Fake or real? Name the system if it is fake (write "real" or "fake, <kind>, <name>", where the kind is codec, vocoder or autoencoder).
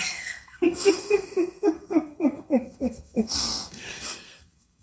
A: fake, codec, SNAC